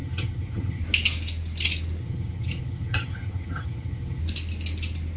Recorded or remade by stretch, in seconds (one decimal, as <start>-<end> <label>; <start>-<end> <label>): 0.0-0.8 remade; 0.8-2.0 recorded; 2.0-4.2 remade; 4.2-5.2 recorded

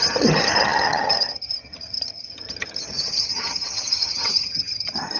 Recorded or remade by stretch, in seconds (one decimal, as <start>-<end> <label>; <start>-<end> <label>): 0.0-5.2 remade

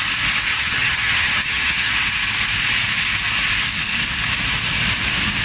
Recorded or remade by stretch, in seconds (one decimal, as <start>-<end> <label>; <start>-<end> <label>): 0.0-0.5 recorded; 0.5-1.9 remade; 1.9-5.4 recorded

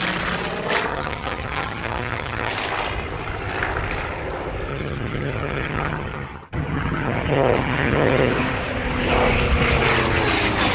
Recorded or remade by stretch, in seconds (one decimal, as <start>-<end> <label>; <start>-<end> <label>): 0.0-0.9 recorded; 0.9-2.5 remade; 2.5-4.7 recorded; 4.7-8.3 remade; 8.3-10.7 recorded

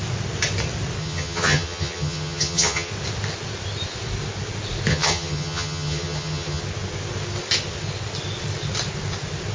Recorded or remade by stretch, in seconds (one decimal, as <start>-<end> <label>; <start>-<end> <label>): 0.0-1.0 recorded; 1.0-2.9 remade; 2.9-4.9 recorded; 4.9-6.6 remade; 6.6-9.5 recorded

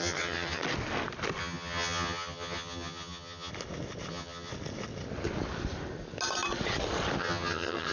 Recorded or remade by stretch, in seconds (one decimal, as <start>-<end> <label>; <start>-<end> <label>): 0.0-0.6 remade; 0.6-1.4 recorded; 1.4-3.5 remade; 3.5-4.1 recorded; 4.1-4.5 remade; 4.5-7.2 recorded; 7.2-7.9 remade

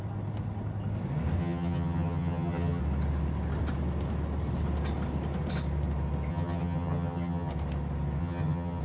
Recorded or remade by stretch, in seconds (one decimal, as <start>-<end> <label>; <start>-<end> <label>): 0.0-1.4 recorded; 1.4-2.8 remade; 2.8-6.3 recorded; 6.3-7.5 remade; 7.5-8.2 recorded; 8.2-8.8 remade

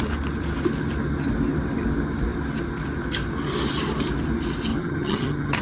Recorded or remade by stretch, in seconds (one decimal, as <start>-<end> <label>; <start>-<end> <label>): 0.0-4.7 recorded; 4.7-5.6 remade